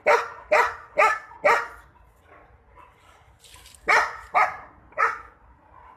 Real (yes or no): yes